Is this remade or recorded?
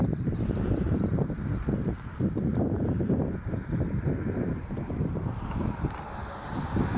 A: remade